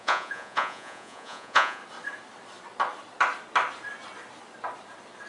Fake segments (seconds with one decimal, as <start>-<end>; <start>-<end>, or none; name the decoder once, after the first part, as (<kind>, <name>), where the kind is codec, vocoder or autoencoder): 0.0-1.8 (vocoder, Vocos)